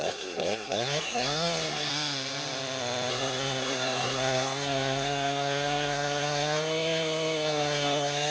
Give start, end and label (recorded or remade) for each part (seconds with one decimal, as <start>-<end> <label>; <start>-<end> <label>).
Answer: 0.0-1.9 remade; 1.9-3.1 recorded; 3.1-8.3 remade